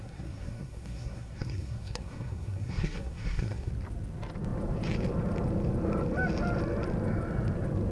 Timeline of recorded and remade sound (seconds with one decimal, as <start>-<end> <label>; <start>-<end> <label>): 0.0-3.7 remade; 3.7-7.9 recorded